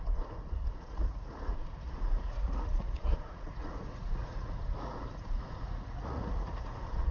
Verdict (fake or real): fake